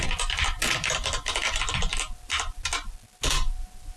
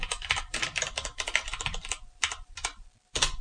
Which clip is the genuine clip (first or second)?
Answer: first